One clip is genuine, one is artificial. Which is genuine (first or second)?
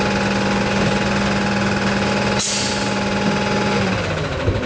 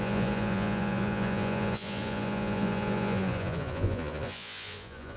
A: first